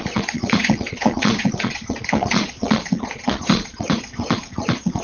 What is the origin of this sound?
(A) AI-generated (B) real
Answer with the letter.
A